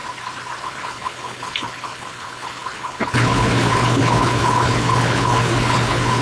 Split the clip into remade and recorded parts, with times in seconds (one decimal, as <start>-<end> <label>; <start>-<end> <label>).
0.0-0.6 recorded; 0.6-6.2 remade